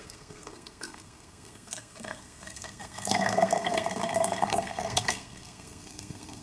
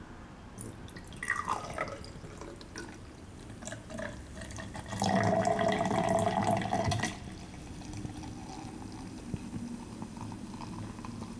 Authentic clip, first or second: second